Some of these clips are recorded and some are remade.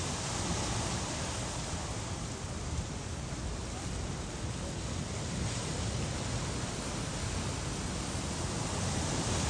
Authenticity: recorded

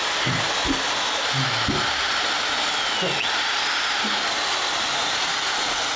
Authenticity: recorded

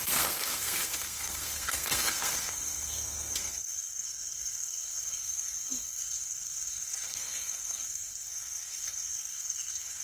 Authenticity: remade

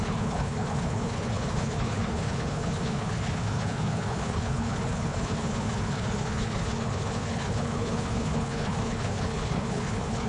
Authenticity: remade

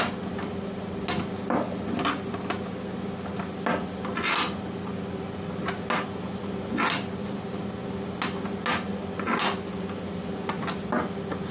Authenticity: recorded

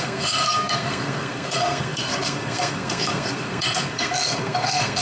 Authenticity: remade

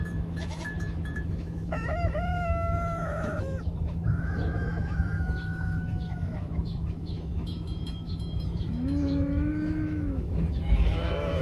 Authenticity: remade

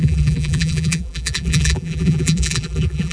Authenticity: remade